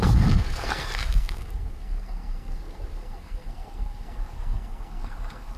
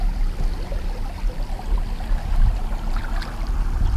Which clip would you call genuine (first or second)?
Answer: second